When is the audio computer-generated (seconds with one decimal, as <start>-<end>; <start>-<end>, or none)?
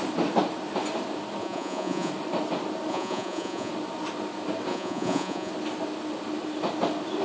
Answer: 1.4-2.1; 2.9-3.7; 4.7-5.5